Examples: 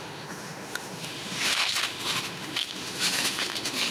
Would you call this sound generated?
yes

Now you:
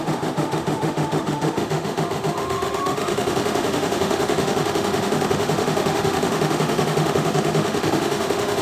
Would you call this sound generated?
yes